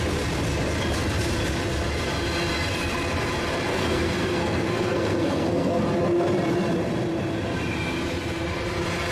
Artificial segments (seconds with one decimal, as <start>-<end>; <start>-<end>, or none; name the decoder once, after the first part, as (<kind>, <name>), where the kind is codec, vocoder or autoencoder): 3.7-5.8 (codec, SNAC)